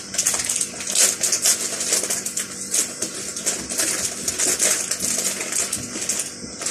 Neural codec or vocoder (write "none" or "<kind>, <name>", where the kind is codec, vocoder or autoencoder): none